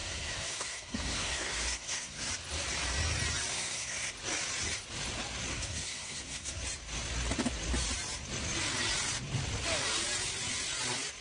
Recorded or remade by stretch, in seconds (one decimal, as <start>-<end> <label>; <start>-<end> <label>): 0.0-2.3 remade; 2.3-3.5 recorded; 3.5-4.1 remade; 4.1-5.5 recorded; 5.5-6.6 remade; 6.6-11.2 recorded